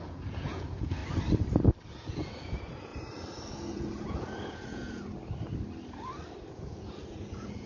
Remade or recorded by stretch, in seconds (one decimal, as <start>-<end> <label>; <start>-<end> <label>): 0.0-1.0 remade; 1.0-1.9 recorded; 1.9-2.9 remade; 2.9-3.7 recorded; 3.7-5.1 remade; 5.1-6.5 recorded; 6.5-7.7 remade

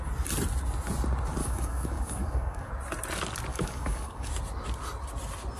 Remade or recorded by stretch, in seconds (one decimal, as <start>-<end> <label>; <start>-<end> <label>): 0.0-1.4 recorded; 1.4-2.7 remade; 2.7-3.5 recorded; 3.5-4.3 remade; 4.3-5.6 recorded

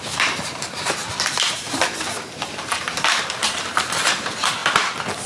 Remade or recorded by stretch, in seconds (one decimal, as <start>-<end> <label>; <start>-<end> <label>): 0.0-4.6 remade; 4.6-5.3 recorded

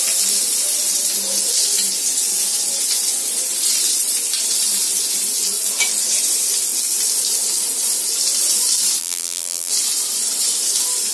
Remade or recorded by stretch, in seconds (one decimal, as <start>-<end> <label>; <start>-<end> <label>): 0.0-9.0 recorded; 9.0-9.7 remade; 9.7-11.1 recorded